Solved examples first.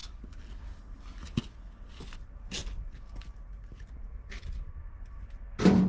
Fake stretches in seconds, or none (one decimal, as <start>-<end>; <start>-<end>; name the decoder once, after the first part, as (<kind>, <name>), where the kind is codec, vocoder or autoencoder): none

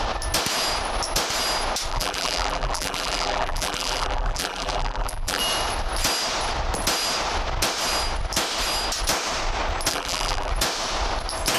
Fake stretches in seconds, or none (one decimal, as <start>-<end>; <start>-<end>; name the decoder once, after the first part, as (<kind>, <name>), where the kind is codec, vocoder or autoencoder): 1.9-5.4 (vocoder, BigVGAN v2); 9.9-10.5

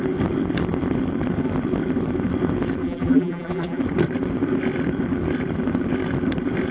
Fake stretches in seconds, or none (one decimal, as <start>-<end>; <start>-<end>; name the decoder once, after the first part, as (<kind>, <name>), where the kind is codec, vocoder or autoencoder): 2.8-3.8 (vocoder, BigVGAN v2)